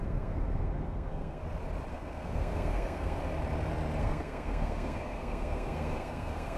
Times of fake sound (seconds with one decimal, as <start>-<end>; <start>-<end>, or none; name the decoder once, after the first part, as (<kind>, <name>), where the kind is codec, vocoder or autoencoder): 0.0-1.4 (codec, SNAC); 1.9-3.2; 4.0-6.6